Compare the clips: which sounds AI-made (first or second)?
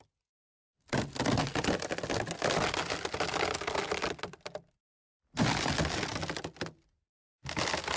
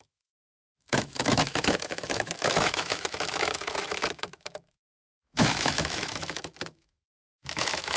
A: second